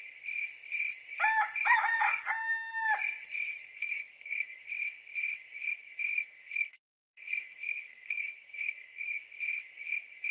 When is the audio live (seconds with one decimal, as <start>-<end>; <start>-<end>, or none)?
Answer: 0.0-3.8; 4.6-6.1; 9.2-10.3